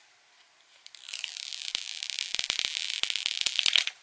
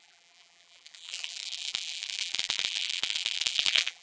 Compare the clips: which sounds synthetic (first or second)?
second